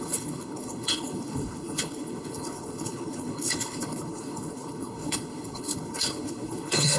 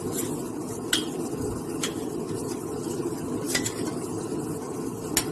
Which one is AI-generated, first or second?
first